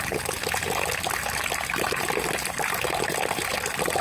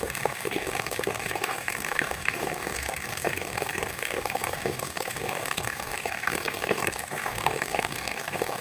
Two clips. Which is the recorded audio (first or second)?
first